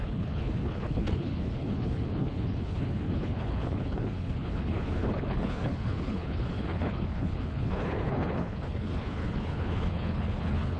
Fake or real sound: fake